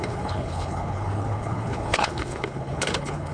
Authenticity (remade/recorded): remade